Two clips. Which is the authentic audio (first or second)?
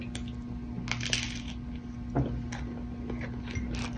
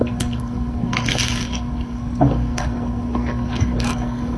first